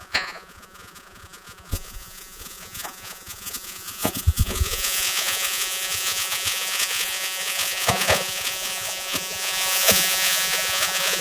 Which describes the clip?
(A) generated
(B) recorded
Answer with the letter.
A